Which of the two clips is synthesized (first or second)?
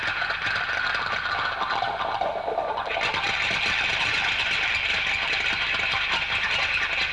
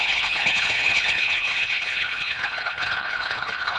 second